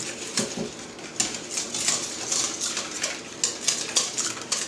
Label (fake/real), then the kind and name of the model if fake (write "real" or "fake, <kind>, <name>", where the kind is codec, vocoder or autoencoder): real